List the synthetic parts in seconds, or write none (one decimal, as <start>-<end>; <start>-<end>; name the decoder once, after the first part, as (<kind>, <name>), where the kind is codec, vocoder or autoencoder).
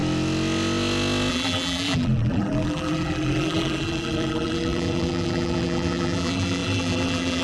1.3-7.4 (vocoder, BigVGAN v2)